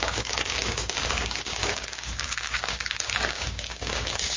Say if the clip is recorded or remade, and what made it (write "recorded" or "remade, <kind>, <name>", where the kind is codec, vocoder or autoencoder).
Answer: remade, codec, DAC